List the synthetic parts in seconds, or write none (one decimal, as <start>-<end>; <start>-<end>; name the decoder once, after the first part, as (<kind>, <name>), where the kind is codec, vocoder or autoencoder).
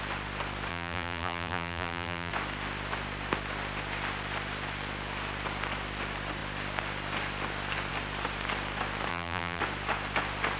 0.7-2.3 (vocoder, BigVGAN v2); 9.1-9.6